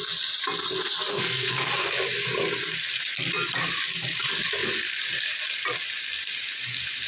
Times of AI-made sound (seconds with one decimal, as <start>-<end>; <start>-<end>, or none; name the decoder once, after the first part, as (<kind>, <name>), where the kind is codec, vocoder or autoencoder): 1.1-1.7 (codec, SNAC)